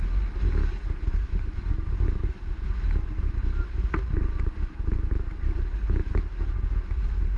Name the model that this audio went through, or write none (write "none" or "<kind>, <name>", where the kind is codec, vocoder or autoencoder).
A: none